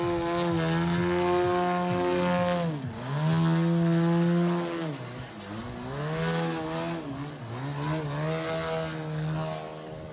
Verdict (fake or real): real